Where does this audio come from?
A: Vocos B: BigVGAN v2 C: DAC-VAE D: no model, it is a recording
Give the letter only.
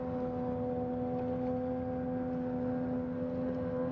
D